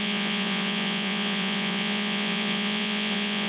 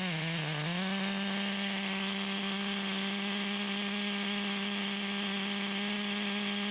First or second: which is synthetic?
first